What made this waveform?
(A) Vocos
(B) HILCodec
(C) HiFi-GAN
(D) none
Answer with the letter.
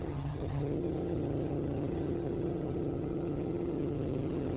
C